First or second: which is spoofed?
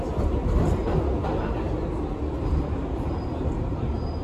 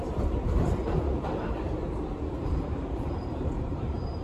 second